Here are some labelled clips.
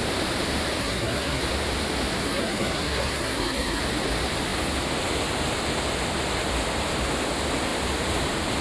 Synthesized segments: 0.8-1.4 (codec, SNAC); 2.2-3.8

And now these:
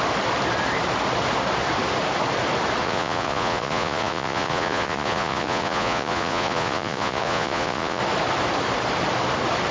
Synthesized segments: 2.8-8.0 (vocoder, Vocos)

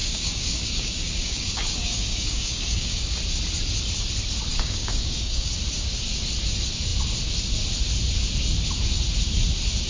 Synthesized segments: 0.0-3.2 (codec, DAC); 4.5-5.5

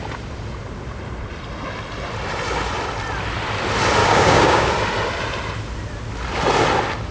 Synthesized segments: 4.0-4.7 (codec, DAC)

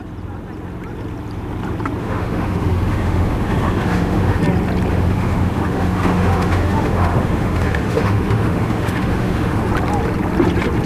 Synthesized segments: 2.0-4.4 (autoencoder, DAC-VAE); 4.9-9.7

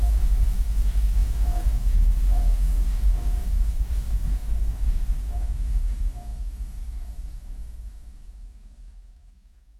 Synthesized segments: 0.0-9.8 (codec, DAC)

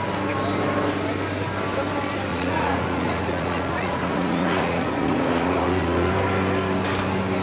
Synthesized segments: 2.3-6.1 (vocoder, Vocos)